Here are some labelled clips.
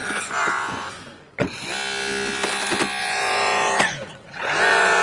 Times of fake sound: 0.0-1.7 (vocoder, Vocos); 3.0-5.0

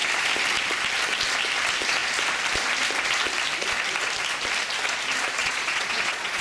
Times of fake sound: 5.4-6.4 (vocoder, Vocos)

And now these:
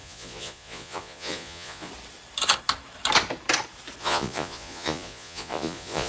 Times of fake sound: 0.0-1.9 (vocoder, Vocos); 4.0-6.1

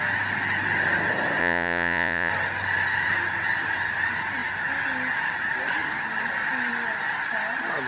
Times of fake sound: 1.4-2.3 (vocoder, Vocos)

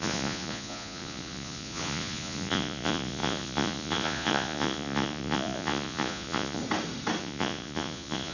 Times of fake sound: 0.0-6.6 (vocoder, Vocos); 7.2-8.3

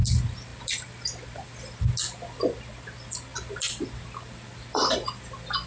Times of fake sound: none

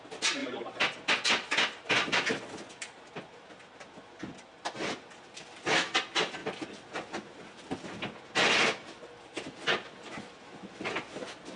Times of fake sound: none

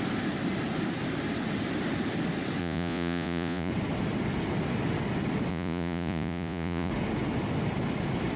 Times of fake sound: 2.6-3.7 (vocoder, Vocos); 5.5-6.9